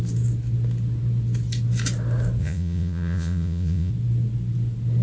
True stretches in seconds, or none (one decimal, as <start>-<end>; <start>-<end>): 0.0-2.4; 3.9-5.0